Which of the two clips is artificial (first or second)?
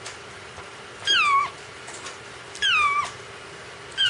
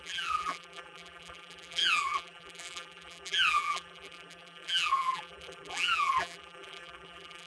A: second